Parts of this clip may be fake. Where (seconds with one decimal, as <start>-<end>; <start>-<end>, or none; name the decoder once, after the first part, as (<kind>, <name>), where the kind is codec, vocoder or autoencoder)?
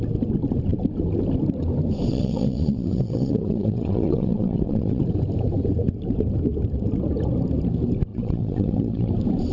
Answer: 2.1-5.0 (vocoder, WaveNeXt); 8.1-9.1